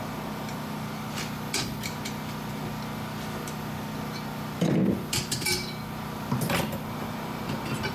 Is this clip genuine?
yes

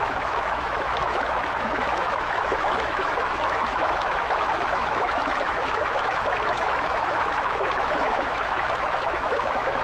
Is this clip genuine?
no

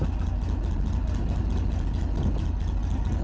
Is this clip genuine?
yes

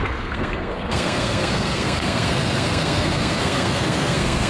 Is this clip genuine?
no